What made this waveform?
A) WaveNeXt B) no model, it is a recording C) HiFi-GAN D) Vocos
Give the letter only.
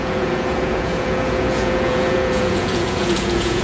D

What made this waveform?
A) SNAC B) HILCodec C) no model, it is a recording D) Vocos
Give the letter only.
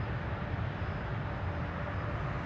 C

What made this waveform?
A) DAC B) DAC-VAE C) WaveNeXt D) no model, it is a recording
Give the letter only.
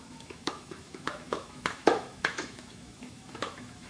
B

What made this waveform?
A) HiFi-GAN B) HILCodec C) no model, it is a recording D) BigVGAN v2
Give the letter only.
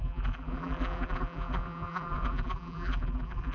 D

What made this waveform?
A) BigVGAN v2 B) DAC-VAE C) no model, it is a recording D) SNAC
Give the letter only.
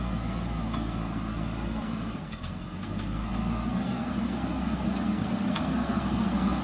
D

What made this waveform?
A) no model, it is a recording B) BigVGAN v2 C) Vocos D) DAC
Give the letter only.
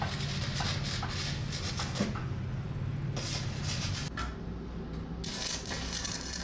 A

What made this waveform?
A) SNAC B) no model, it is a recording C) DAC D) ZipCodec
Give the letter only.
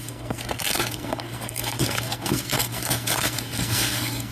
A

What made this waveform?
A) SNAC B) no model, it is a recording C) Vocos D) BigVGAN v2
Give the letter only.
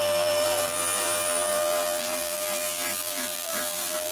D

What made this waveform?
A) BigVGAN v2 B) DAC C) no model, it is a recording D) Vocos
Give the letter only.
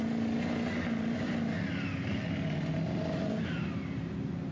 C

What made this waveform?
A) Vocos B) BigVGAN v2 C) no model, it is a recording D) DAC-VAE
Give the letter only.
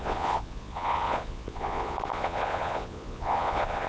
A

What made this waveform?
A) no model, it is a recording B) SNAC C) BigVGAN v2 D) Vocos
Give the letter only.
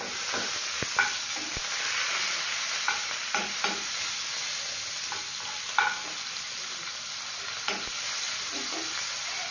A